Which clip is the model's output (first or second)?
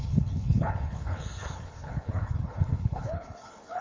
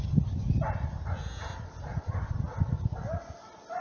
first